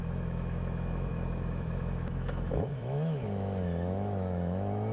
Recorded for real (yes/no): no